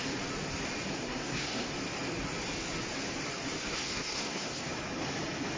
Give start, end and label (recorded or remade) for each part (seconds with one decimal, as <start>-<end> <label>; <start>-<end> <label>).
0.0-0.9 recorded; 0.9-1.7 remade; 1.7-3.7 recorded; 3.7-4.7 remade; 4.7-5.6 recorded